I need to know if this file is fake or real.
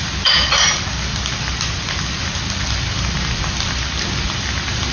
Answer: real